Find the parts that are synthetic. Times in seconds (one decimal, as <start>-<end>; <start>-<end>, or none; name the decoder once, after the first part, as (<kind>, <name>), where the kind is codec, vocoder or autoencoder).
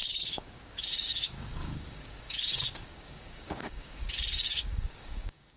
0.0-5.6 (codec, DAC)